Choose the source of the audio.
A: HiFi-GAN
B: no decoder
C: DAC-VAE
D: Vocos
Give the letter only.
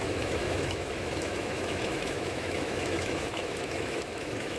C